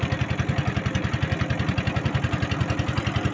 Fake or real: real